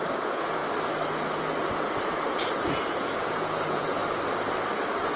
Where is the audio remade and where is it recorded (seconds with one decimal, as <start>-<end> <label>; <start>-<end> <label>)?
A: 0.0-0.6 remade; 0.6-2.1 recorded; 2.1-4.0 remade; 4.0-5.2 recorded